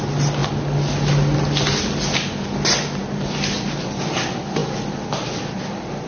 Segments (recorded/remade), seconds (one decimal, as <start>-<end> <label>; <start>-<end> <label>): 0.0-6.1 recorded